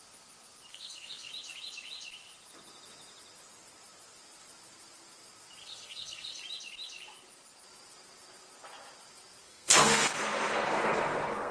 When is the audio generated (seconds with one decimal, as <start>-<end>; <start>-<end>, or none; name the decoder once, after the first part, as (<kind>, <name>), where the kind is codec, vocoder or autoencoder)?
0.7-1.3 (codec, SNAC); 5.6-6.4; 9.4-11.5